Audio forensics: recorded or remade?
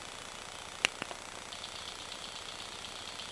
recorded